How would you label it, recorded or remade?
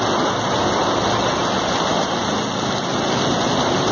recorded